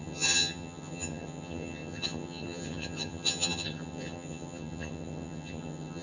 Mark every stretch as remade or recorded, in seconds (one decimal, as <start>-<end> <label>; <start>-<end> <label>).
0.0-6.0 remade